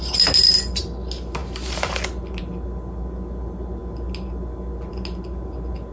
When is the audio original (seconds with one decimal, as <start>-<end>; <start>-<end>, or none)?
0.0-5.9